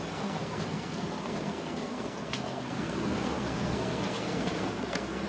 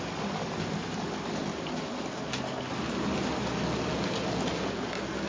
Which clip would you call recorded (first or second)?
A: second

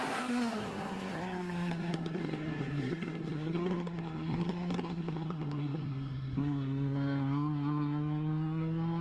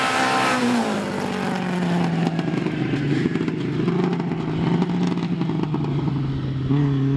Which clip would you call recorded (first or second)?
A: second